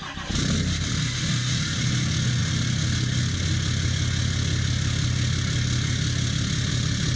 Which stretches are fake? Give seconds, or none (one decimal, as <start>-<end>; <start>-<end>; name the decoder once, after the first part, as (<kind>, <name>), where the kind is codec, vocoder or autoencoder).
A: none

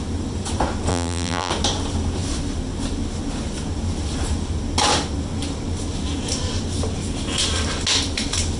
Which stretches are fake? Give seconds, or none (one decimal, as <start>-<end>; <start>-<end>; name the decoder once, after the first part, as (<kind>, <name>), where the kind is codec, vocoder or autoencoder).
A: 0.9-1.5 (vocoder, BigVGAN v2)

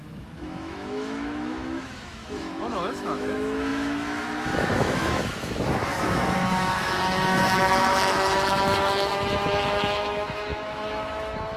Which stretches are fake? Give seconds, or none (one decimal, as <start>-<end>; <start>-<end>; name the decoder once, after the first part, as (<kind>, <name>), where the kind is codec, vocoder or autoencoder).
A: 0.0-11.6 (autoencoder, DAC-VAE)

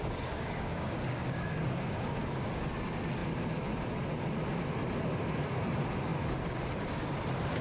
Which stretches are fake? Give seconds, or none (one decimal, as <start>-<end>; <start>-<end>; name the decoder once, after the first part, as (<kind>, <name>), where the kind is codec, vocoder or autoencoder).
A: 0.0-2.6 (codec, DAC)

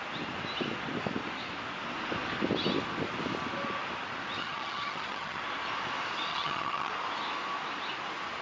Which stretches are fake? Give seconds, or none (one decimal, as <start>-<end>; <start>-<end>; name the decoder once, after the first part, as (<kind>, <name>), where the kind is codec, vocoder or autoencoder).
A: 4.4-5.4 (vocoder, HiFi-GAN); 6.3-6.9